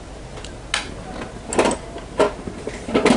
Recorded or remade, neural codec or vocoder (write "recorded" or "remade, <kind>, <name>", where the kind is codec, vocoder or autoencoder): recorded